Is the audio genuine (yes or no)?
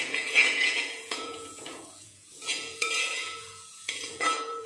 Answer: no